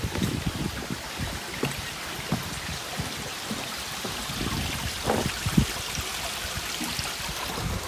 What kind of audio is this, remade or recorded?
recorded